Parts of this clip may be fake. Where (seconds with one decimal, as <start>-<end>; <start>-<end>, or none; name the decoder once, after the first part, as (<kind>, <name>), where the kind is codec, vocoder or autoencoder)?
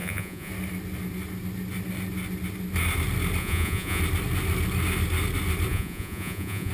0.0-0.5 (vocoder, Vocos); 3.4-4.0; 5.7-6.7